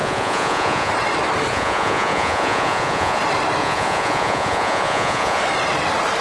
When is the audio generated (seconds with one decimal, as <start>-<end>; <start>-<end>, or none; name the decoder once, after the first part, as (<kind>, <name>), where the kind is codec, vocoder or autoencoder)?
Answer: 0.0-0.9 (vocoder, Vocos); 1.5-3.2; 3.6-5.4